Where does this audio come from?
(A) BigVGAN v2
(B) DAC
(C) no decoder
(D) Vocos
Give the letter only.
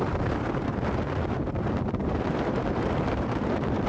A